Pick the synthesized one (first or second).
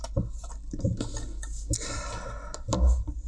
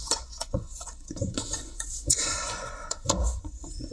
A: second